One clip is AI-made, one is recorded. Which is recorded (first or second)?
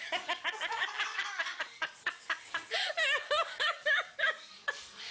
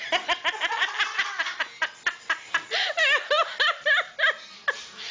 second